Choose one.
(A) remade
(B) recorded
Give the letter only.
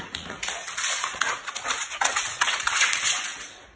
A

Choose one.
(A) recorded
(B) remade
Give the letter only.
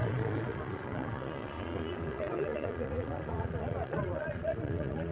B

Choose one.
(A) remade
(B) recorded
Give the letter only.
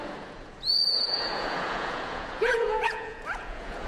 A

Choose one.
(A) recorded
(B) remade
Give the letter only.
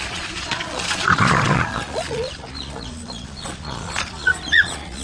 B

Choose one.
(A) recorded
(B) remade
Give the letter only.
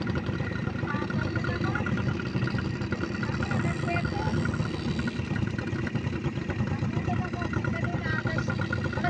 A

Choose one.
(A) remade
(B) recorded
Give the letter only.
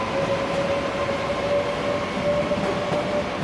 B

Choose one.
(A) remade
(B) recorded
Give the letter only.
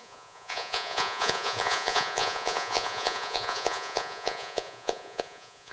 A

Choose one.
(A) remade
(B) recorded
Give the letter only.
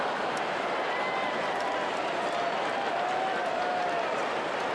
B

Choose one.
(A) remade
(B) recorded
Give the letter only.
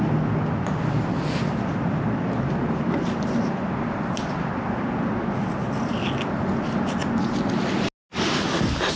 B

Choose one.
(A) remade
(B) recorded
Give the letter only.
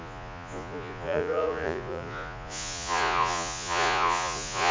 A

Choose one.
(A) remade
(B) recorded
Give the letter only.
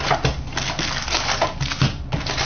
B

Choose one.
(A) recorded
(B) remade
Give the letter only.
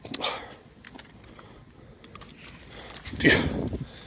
A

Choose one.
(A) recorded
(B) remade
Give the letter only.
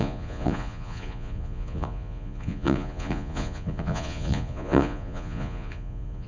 B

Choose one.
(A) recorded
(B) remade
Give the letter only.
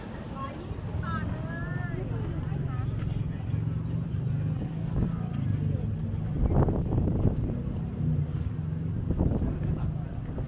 A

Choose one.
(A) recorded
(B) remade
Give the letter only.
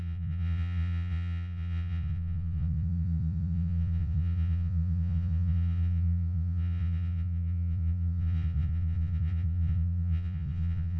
B